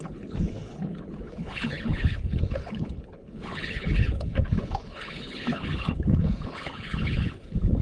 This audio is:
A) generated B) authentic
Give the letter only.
A